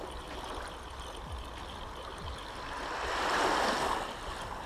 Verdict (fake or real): real